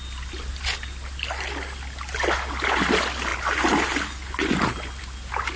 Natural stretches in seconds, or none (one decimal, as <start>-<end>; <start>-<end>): 0.0-5.6